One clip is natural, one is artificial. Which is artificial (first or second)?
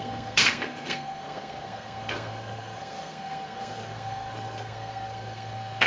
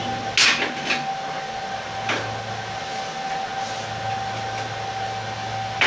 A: first